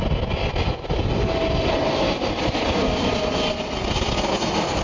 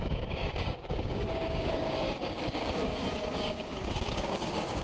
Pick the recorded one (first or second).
first